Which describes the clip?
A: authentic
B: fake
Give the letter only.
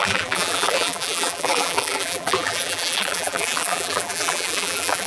B